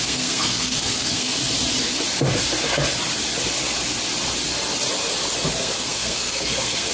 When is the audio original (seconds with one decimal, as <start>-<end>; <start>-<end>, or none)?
1.4-5.5